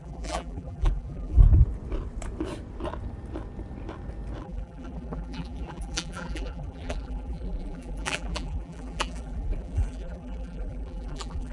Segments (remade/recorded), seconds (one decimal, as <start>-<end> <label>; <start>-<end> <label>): 0.0-1.4 remade; 1.4-4.4 recorded; 4.4-11.5 remade